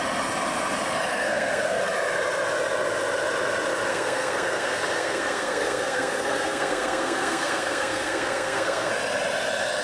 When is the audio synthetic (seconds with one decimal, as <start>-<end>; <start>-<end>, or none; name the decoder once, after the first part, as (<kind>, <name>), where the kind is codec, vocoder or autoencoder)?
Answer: 1.1-1.8 (codec, SNAC); 3.9-8.9